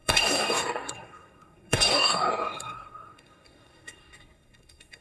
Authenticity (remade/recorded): remade